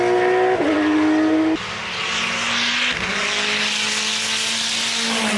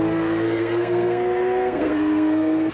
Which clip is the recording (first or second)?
first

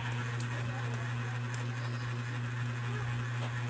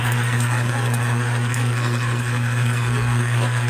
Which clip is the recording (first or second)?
first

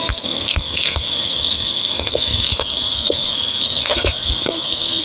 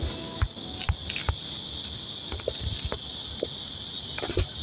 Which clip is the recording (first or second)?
second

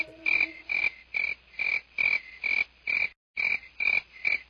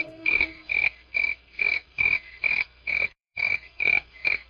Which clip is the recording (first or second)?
first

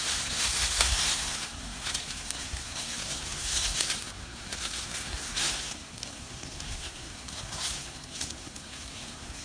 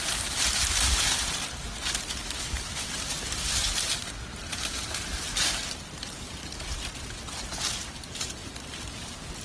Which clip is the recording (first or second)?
second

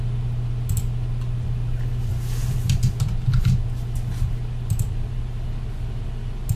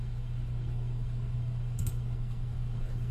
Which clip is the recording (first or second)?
first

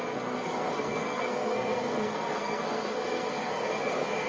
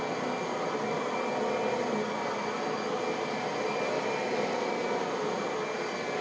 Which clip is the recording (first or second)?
second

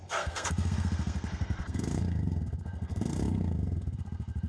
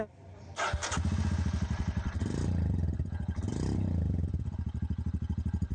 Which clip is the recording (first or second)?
second